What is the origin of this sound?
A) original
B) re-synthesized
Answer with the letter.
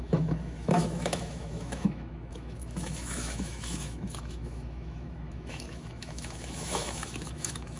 B